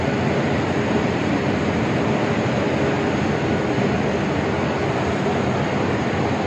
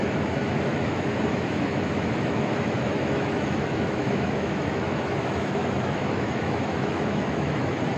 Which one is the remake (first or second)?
second